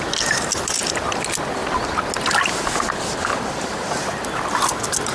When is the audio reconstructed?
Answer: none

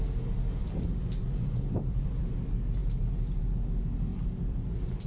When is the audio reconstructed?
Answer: 0.6-2.3 (vocoder, BigVGAN v2); 4.1-5.1

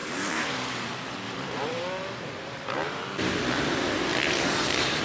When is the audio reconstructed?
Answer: 0.0-3.0 (vocoder, BigVGAN v2)

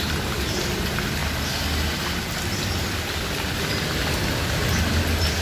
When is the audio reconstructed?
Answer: none

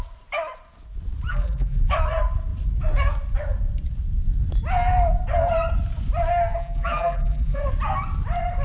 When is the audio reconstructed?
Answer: 1.3-1.9 (vocoder, BigVGAN v2); 6.6-7.6